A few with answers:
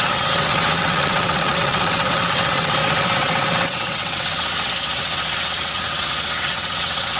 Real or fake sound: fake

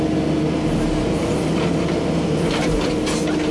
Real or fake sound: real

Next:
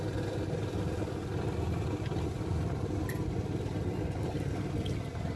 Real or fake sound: real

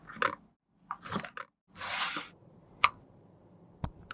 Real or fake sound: real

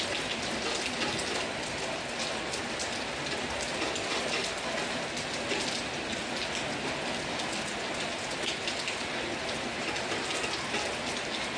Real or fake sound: real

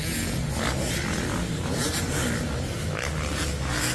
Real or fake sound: real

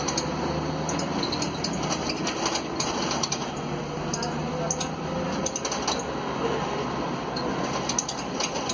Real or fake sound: real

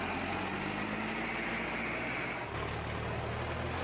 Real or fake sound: real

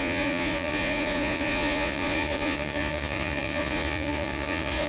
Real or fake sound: fake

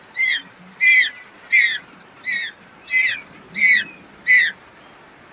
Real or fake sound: fake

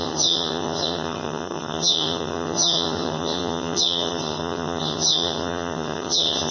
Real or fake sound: fake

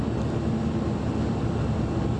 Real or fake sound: real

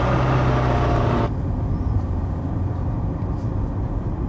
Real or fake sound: real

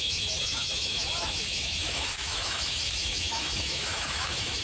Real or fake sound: fake